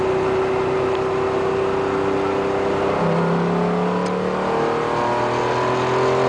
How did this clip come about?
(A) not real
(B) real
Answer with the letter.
B